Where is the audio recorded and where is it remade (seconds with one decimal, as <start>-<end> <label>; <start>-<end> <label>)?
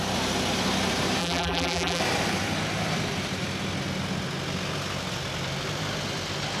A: 0.0-1.2 recorded; 1.2-2.0 remade; 2.0-6.6 recorded